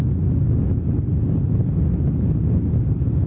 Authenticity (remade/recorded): recorded